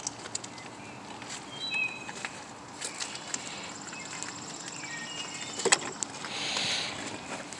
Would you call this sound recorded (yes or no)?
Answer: yes